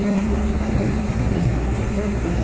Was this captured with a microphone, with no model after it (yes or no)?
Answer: no